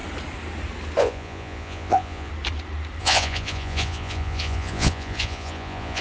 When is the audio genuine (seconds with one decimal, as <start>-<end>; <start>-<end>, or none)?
0.0-1.0; 2.3-3.0